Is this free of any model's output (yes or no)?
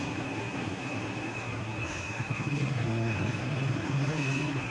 no